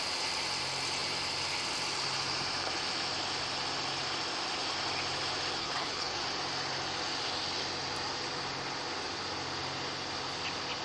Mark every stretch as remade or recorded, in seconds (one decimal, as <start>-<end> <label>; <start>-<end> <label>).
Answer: 0.0-5.6 recorded; 5.6-6.2 remade; 6.2-10.8 recorded